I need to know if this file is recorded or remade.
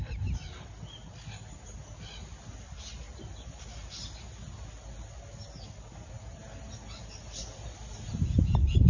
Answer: recorded